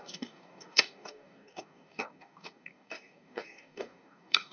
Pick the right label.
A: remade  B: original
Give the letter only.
A